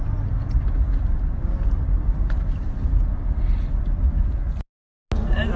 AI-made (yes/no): no